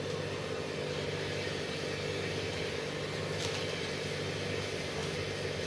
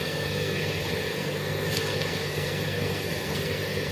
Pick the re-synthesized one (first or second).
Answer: second